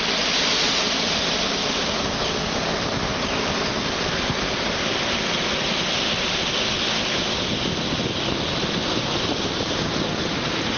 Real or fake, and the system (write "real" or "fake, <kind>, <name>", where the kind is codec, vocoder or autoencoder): real